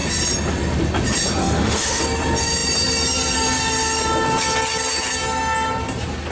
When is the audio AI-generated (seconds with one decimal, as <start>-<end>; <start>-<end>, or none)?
1.4-2.0